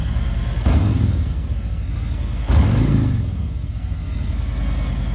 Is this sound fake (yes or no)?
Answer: yes